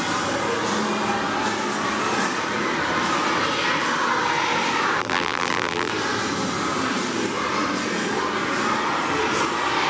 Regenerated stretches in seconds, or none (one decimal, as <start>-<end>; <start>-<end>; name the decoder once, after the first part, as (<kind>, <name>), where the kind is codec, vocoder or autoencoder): 5.0-5.9 (vocoder, BigVGAN v2)

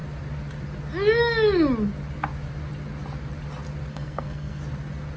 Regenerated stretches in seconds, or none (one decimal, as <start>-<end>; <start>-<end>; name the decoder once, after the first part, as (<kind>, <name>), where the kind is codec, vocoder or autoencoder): 3.9-4.6 (codec, SNAC)

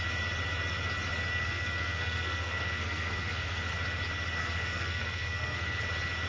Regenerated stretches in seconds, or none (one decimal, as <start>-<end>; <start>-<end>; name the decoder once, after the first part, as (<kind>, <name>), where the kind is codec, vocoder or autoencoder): 1.3-3.7 (codec, SNAC); 4.4-5.8

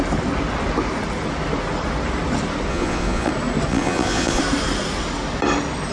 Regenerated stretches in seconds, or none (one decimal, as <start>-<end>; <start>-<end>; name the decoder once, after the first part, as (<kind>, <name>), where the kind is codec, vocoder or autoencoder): 2.7-3.3 (vocoder, Vocos); 3.7-4.4

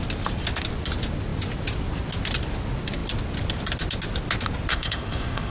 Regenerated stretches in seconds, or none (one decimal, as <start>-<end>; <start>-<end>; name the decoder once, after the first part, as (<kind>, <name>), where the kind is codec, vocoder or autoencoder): 4.7-5.5 (codec, SNAC)